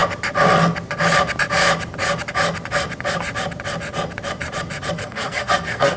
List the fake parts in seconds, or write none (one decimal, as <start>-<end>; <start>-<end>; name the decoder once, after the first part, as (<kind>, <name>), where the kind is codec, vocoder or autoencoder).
5.0-6.0 (codec, SNAC)

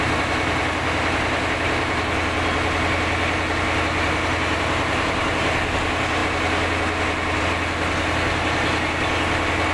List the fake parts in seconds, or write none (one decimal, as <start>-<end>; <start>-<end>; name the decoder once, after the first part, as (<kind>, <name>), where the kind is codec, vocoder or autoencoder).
none

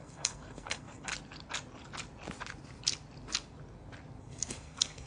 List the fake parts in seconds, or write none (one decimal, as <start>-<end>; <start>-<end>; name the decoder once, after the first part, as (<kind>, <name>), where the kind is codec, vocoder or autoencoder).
0.0-1.1 (codec, SNAC); 4.2-5.1

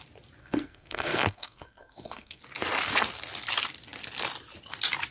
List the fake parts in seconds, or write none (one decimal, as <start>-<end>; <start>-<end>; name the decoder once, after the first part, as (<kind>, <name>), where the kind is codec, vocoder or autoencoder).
0.4-2.4 (codec, SNAC)

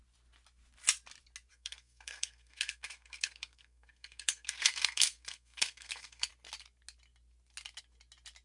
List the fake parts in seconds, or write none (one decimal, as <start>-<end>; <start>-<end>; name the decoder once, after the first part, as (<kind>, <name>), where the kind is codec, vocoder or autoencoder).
1.5-6.3 (codec, SNAC)

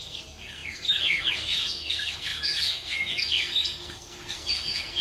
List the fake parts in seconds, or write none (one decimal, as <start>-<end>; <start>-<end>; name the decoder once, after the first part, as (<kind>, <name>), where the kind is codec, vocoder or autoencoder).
0.0-5.0 (codec, SNAC)